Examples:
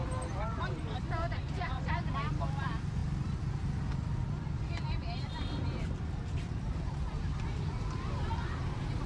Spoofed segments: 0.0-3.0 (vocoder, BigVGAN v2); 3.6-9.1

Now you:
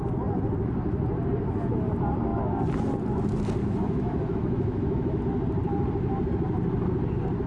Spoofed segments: 3.6-5.2 (autoencoder, DAC-VAE)

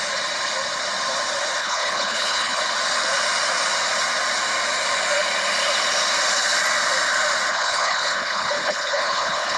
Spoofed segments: 1.6-2.6 (codec, HILCodec); 7.5-9.6

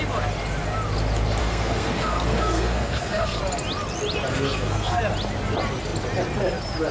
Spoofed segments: 1.4-3.4 (codec, SNAC); 4.3-5.0

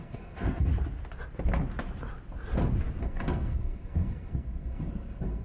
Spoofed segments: 0.0-0.7 (codec, SNAC); 3.0-5.4